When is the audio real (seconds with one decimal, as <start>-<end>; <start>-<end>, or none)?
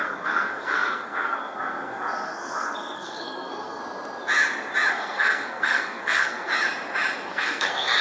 3.8-4.9; 6.5-7.3